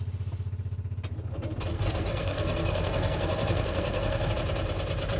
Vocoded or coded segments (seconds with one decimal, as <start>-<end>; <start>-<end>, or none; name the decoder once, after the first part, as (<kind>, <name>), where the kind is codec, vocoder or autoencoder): 1.7-4.3 (codec, SNAC)